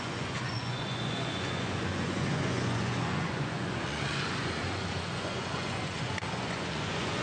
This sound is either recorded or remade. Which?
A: remade